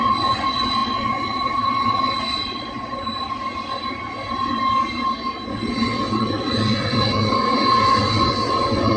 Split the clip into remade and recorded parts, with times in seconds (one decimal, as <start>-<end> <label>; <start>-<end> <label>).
0.0-3.0 remade; 3.0-5.5 recorded; 5.5-9.0 remade